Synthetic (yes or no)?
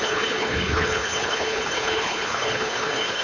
yes